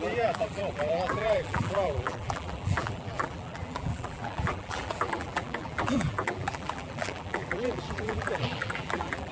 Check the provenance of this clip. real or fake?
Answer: fake